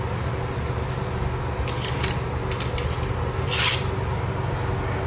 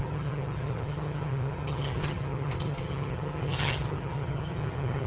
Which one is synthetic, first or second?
second